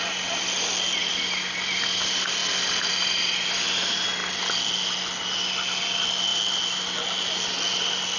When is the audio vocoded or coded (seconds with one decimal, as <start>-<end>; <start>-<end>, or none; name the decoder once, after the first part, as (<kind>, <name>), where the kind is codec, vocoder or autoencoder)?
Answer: none